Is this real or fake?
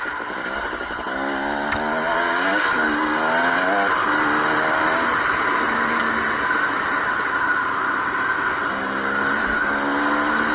real